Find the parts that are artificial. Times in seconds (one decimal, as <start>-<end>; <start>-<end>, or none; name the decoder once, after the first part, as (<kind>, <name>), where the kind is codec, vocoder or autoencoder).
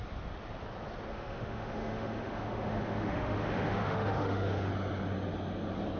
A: 1.1-4.7 (autoencoder, DAC-VAE)